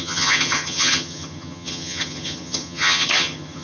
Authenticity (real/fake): fake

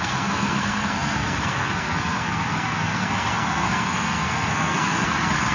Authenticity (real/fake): fake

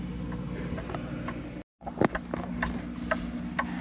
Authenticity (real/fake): real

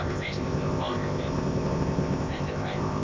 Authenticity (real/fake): fake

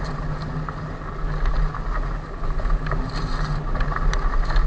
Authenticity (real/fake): real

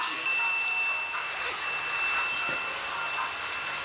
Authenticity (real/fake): real